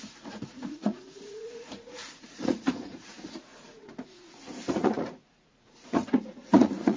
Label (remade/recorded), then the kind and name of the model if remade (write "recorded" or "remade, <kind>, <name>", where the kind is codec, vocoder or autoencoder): remade, vocoder, Vocos